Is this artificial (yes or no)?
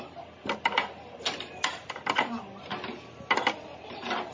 no